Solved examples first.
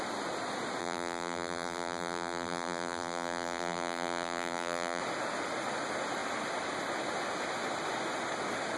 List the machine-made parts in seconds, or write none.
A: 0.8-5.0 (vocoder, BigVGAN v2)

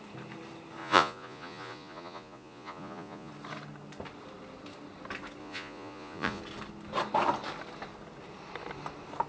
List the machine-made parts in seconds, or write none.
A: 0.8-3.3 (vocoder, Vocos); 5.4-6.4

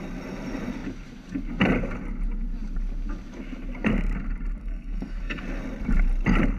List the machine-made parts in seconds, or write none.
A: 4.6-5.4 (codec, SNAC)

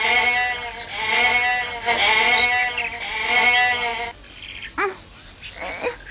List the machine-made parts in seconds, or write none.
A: none